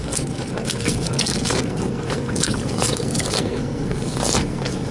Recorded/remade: remade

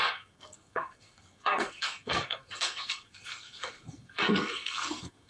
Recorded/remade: remade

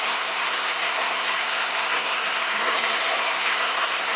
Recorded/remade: remade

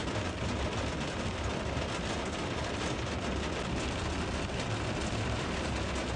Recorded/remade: recorded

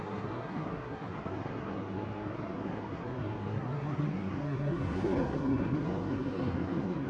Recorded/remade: remade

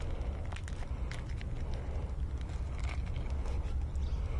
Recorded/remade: recorded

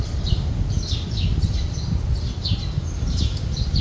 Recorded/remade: recorded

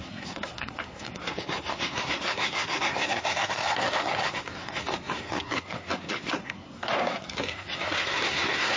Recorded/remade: remade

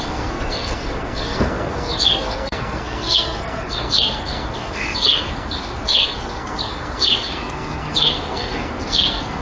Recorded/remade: remade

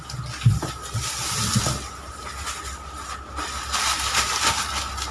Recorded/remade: recorded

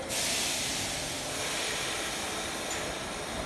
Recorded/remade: recorded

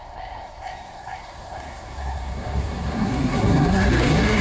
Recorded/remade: remade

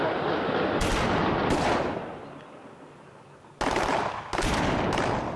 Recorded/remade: recorded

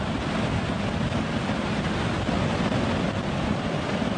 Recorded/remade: recorded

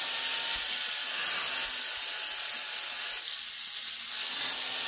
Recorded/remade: recorded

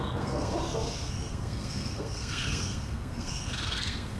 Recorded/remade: remade